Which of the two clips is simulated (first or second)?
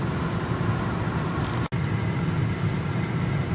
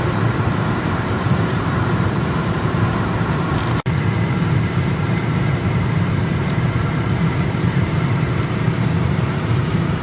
second